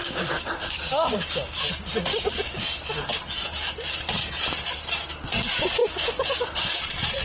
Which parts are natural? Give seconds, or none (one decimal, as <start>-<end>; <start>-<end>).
1.7-2.1; 3.2-5.8; 6.8-7.2